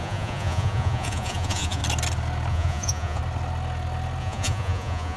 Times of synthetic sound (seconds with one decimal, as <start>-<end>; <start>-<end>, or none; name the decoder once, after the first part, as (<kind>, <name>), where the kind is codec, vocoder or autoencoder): 0.0-1.8 (vocoder, Vocos); 2.5-3.2; 4.2-5.2